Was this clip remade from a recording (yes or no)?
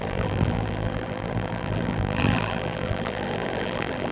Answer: yes